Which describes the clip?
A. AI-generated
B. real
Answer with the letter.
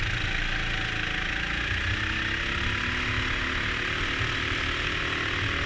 B